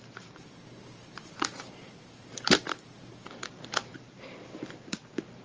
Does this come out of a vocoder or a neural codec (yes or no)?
yes